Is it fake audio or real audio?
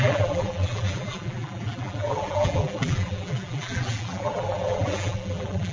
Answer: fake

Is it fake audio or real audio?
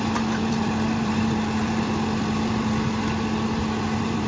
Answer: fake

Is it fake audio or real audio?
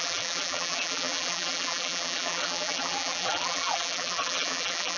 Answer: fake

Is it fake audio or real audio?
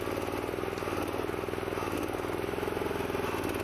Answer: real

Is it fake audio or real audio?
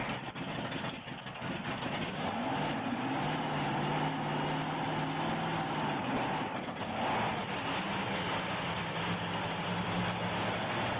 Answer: real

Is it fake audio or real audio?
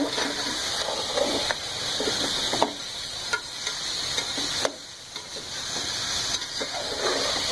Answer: real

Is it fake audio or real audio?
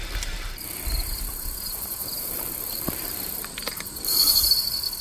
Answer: fake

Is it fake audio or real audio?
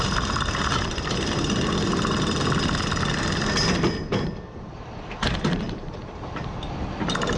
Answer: real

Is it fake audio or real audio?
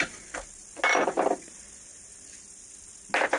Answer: real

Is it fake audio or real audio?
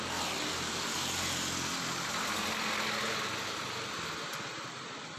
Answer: real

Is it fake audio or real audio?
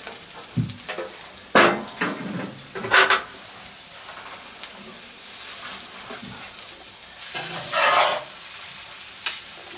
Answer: real